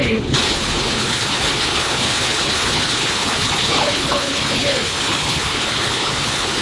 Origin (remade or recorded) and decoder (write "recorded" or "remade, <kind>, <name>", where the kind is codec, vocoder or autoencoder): remade, codec, HILCodec